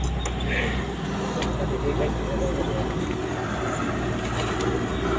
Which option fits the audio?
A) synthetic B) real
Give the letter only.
B